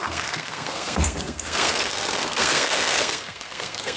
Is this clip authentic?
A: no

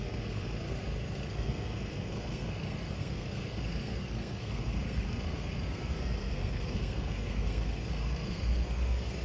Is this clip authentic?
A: no